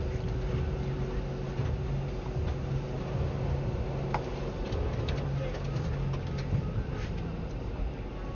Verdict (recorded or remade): recorded